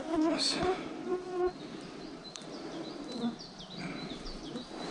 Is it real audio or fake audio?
fake